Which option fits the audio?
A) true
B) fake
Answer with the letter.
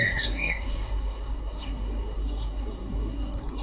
B